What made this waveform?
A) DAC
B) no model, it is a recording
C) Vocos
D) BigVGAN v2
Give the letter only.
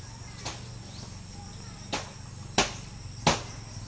B